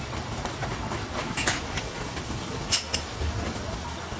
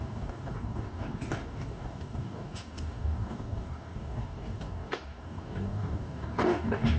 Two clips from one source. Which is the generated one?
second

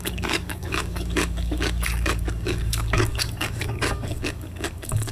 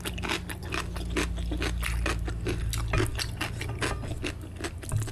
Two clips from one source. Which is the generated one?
first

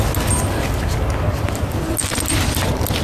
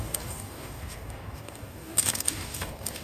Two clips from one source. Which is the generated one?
second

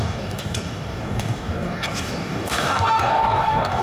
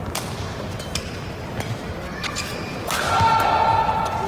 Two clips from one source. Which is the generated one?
first